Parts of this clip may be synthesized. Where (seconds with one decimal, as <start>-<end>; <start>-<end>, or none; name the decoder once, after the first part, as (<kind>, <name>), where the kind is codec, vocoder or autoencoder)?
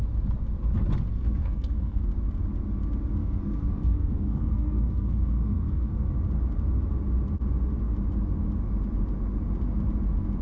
1.1-2.0 (codec, SNAC); 3.2-6.1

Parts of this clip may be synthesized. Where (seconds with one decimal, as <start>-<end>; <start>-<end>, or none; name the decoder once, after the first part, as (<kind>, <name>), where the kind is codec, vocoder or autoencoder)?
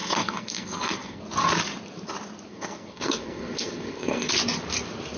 0.0-1.2 (codec, SNAC); 2.5-4.3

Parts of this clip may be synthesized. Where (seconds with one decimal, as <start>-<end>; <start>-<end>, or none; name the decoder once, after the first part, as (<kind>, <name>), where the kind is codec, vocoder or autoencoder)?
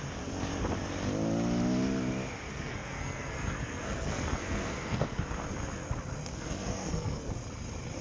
2.5-5.2 (codec, SNAC); 6.3-7.3